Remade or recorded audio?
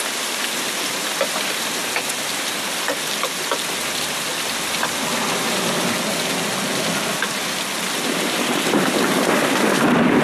recorded